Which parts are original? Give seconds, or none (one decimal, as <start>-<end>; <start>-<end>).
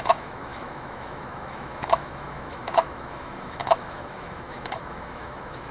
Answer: none